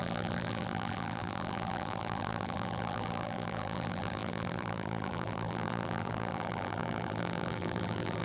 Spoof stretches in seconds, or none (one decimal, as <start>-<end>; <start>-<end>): 0.0-8.2

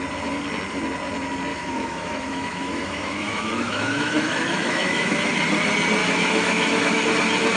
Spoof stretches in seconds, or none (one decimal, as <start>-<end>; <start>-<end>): 1.5-5.1; 6.0-7.0

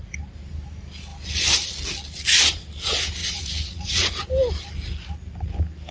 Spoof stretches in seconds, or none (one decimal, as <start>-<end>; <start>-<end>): 3.2-4.1

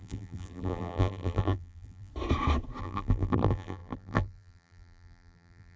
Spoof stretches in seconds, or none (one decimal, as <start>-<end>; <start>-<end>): 0.0-2.1; 2.8-5.8

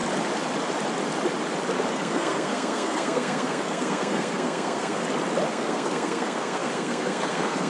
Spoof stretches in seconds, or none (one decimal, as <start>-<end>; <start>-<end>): 1.9-5.0; 5.5-7.7